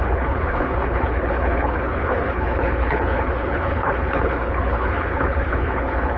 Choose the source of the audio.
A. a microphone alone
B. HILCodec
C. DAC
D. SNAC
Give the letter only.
B